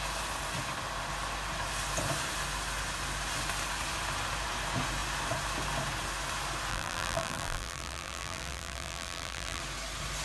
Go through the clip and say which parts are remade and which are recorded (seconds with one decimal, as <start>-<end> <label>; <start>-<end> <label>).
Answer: 0.0-6.7 recorded; 6.7-9.6 remade; 9.6-10.2 recorded